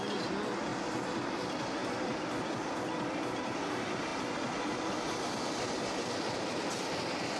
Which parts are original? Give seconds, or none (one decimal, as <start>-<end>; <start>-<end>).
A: 0.0-7.4